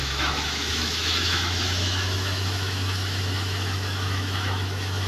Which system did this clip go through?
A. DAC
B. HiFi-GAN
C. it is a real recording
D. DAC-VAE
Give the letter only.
D